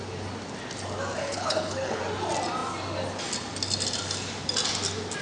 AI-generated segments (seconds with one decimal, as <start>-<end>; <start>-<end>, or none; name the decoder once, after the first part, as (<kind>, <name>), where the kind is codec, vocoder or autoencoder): 1.2-2.0 (codec, HILCodec)